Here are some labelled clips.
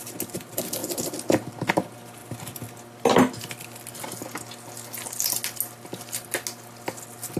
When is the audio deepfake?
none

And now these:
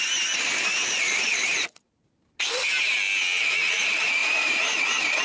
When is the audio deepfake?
4.2-5.2 (vocoder, Vocos)

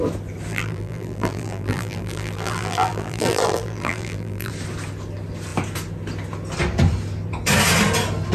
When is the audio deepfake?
0.5-4.5 (vocoder, BigVGAN v2)

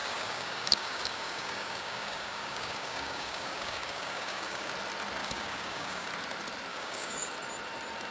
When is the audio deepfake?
0.0-4.7 (codec, DAC); 5.2-6.1; 6.7-7.3

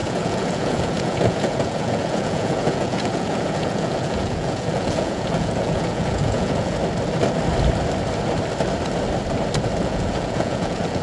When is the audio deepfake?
0.0-6.8 (vocoder, Vocos); 9.8-11.0